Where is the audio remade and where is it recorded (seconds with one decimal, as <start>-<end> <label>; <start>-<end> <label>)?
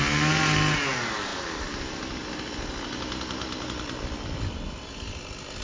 0.0-5.6 recorded